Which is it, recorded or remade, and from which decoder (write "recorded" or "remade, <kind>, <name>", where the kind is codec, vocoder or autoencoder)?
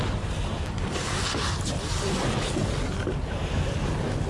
recorded